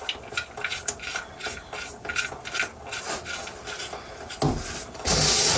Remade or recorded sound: recorded